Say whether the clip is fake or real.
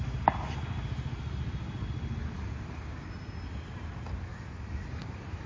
real